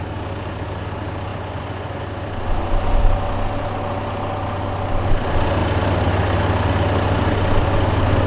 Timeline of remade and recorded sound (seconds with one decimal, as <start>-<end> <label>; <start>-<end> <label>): 0.0-1.3 recorded; 1.3-2.0 remade; 2.0-8.3 recorded